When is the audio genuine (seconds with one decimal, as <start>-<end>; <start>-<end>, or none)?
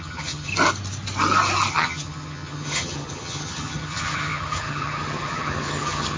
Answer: 0.5-1.7